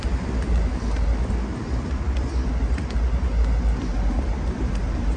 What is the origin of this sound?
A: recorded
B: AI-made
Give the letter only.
A